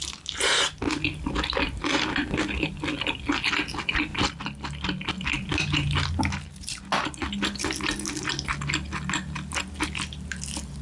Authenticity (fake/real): real